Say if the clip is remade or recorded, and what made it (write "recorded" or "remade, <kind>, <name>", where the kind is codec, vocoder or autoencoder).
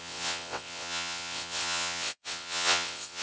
remade, vocoder, WaveNeXt